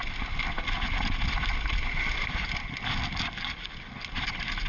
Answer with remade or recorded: recorded